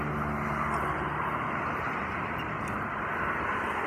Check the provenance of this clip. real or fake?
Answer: real